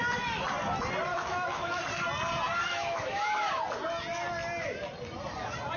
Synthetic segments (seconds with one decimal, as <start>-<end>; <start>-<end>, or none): 1.1-1.8; 2.6-3.5